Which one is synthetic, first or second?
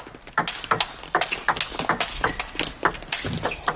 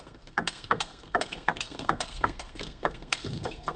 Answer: second